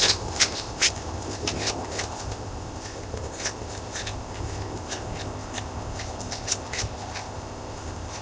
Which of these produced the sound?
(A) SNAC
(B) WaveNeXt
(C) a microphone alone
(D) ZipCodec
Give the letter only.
D